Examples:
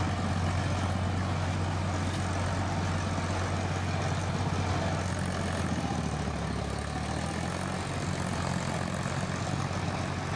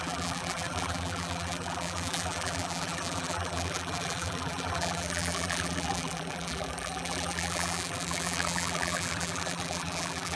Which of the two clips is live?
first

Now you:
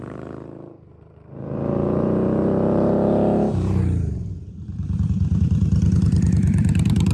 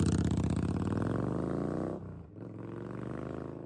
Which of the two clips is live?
second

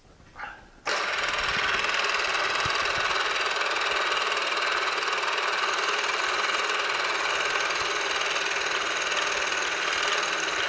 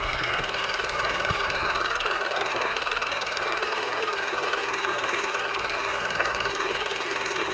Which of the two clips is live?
first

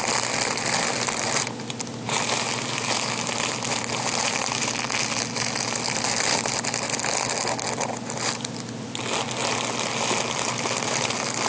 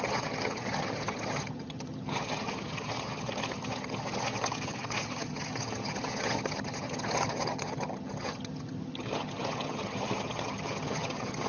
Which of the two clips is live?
first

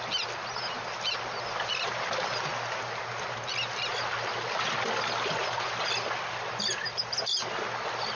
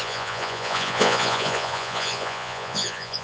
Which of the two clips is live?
first